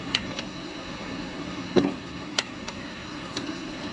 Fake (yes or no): yes